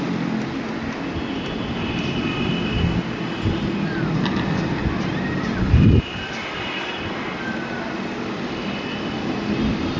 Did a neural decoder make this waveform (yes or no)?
no